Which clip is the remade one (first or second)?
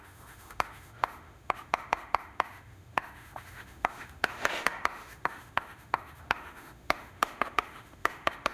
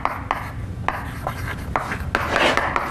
first